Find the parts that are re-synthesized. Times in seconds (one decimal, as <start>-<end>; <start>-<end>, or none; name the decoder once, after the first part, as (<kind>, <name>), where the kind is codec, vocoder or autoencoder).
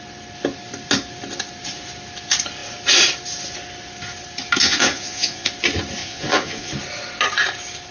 4.6-5.5 (vocoder, Vocos); 6.0-6.7